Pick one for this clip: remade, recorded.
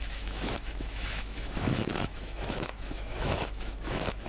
remade